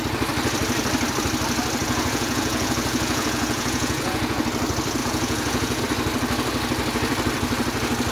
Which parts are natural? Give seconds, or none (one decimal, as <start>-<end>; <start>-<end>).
0.0-1.8; 4.4-5.0; 5.8-8.1